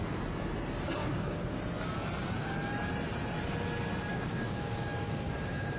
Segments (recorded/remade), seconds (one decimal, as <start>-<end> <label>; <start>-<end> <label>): 0.0-1.0 recorded; 1.0-1.6 remade; 1.6-4.1 recorded; 4.1-5.8 remade